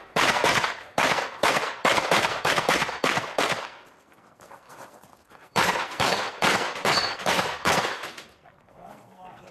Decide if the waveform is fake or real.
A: fake